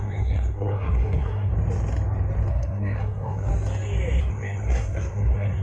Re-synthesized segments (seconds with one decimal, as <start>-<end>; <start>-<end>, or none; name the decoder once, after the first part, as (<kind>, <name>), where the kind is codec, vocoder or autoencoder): 0.0-1.5 (codec, SNAC); 2.5-3.5; 4.2-5.6